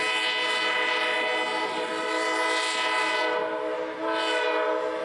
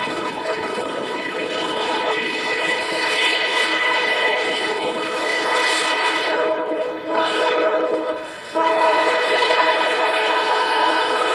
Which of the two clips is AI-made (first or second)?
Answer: second